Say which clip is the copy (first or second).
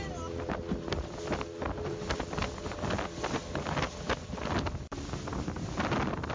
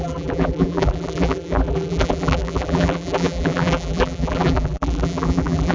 second